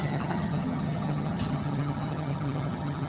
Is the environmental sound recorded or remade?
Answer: remade